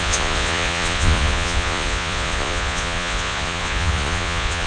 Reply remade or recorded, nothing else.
remade